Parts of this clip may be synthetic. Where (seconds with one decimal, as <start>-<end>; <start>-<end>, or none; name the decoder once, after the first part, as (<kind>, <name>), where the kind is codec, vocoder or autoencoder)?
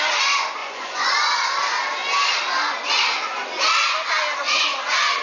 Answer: 0.6-1.1 (vocoder, Vocos)